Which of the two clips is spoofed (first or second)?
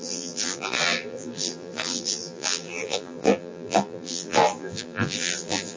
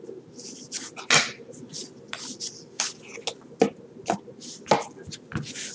first